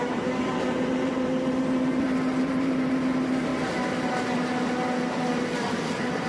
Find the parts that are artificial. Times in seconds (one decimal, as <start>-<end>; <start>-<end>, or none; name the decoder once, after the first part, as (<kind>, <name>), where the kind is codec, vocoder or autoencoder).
0.0-3.5 (vocoder, BigVGAN v2); 5.6-6.3